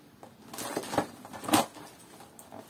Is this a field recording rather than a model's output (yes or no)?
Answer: yes